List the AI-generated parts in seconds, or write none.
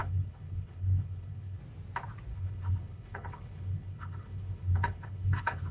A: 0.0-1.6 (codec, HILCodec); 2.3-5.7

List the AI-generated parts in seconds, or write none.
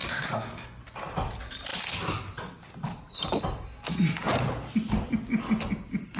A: 0.0-0.8 (codec, SNAC)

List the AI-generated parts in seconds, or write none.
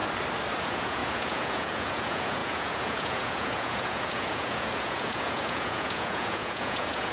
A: 0.6-7.1 (vocoder, Vocos)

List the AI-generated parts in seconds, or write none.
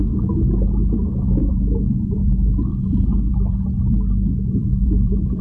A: 1.4-3.5 (vocoder, BigVGAN v2); 4.6-5.4